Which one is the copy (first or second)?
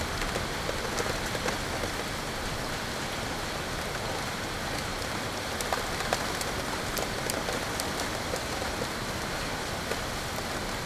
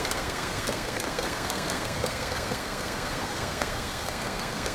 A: second